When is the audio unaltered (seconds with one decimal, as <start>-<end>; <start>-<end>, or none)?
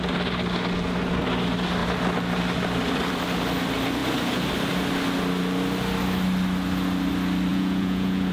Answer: 0.0-7.5